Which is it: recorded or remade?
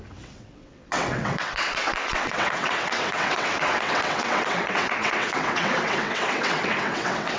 remade